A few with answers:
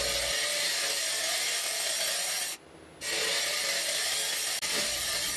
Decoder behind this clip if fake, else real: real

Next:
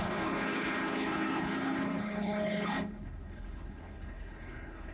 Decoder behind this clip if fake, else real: fake, codec, HILCodec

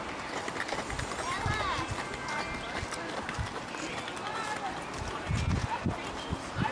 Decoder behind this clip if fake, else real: real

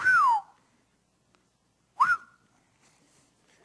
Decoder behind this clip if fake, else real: real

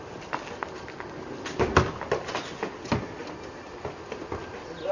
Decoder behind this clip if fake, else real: real